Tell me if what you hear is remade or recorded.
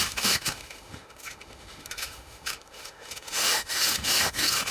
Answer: remade